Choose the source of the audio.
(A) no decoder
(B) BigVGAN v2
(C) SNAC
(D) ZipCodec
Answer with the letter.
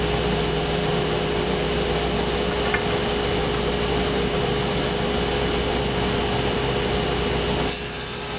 A